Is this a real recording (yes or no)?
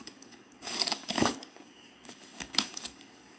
no